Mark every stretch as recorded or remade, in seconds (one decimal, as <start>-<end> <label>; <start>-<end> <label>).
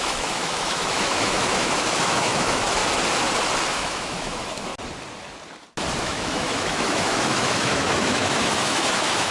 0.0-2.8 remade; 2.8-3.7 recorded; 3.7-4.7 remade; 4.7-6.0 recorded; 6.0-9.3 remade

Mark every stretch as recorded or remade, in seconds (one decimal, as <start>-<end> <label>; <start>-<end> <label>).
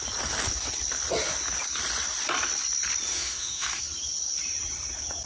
0.0-3.1 recorded; 3.1-3.8 remade; 3.8-5.2 recorded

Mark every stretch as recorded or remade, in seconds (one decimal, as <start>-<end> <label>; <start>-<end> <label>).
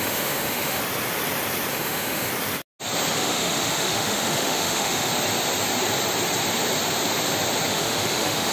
0.0-0.8 remade; 0.8-1.7 recorded; 1.7-2.3 remade; 2.3-3.1 recorded; 3.1-5.1 remade; 5.1-7.7 recorded; 7.7-8.5 remade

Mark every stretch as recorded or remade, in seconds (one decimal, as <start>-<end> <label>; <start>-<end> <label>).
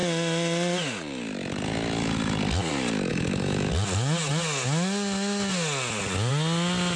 0.0-3.1 recorded; 3.1-3.7 remade; 3.7-7.0 recorded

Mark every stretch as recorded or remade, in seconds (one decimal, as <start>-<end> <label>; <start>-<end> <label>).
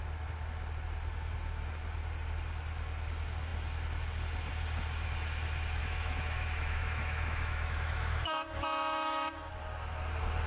0.0-5.8 recorded; 5.8-9.5 remade; 9.5-10.5 recorded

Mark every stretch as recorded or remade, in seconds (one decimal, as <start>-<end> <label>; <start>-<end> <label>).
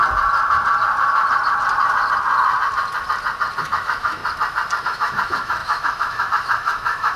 0.0-3.6 recorded; 3.6-4.2 remade; 4.2-4.8 recorded; 4.8-7.2 remade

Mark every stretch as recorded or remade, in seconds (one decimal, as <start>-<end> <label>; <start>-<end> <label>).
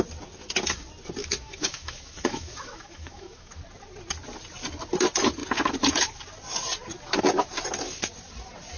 0.0-1.2 recorded; 1.2-3.6 remade; 3.6-8.8 recorded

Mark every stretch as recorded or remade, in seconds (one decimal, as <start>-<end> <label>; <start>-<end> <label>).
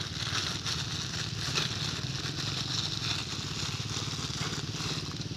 0.0-5.4 recorded